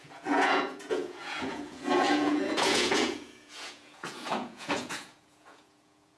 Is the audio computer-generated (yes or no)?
yes